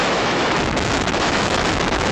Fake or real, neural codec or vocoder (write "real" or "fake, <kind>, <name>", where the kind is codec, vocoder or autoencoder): fake, autoencoder, DAC-VAE